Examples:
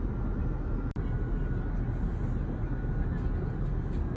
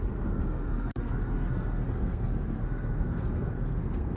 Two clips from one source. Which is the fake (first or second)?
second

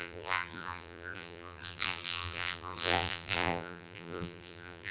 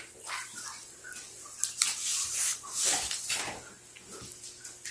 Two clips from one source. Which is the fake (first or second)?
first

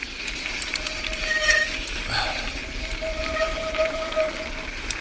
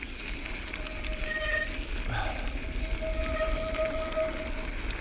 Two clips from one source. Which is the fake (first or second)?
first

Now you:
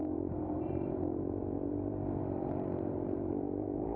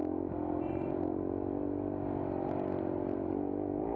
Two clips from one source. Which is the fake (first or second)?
first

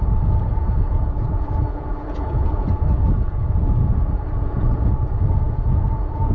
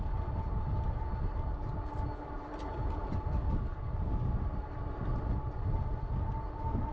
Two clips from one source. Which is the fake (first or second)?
first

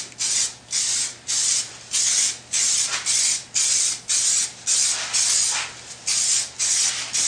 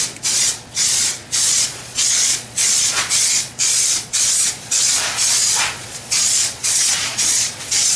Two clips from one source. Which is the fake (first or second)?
second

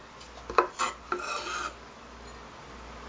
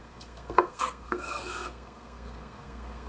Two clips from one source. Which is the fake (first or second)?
second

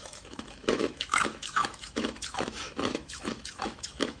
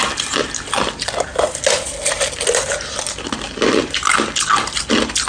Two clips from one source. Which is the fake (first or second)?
first